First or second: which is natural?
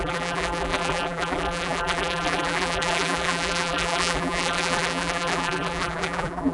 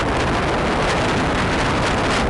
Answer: second